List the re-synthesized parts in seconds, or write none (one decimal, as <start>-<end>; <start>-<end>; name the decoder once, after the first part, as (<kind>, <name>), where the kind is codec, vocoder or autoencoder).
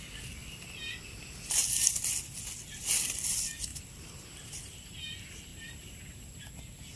3.7-4.5 (vocoder, BigVGAN v2); 5.5-6.4